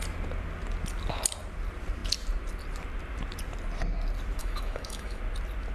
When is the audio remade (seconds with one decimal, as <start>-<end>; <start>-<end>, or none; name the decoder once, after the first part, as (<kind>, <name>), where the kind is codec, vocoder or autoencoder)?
4.4-5.2 (autoencoder, DAC-VAE)